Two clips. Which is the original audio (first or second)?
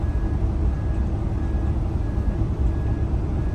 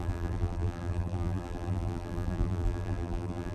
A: first